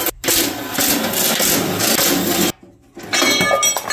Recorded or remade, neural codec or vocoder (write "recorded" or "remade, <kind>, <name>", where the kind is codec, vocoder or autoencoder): recorded